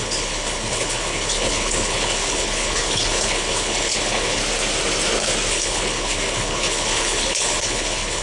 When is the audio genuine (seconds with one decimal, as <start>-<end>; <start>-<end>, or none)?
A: 4.4-5.5